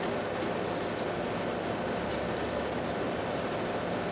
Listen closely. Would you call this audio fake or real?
real